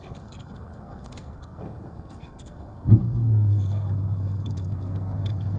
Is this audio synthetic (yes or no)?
yes